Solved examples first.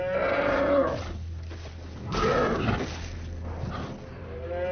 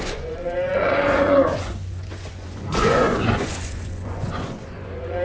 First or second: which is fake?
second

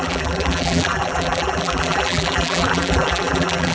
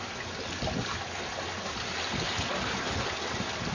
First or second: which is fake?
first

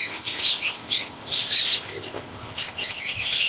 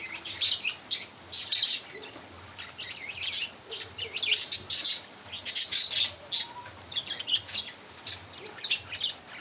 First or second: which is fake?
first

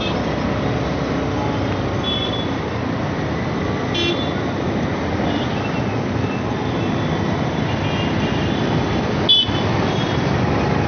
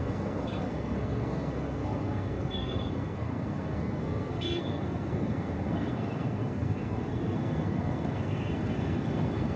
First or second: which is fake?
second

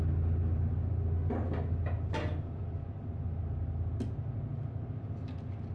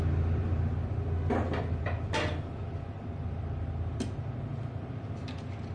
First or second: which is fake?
second